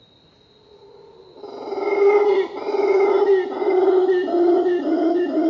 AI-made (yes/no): no